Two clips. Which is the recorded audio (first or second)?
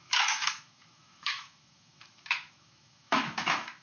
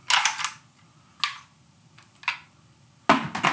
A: second